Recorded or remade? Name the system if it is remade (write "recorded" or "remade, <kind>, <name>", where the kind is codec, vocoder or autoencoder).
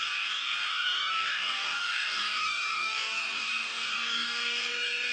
remade, codec, DAC